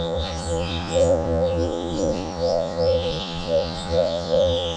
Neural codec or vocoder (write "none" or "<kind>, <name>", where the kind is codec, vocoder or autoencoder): vocoder, Vocos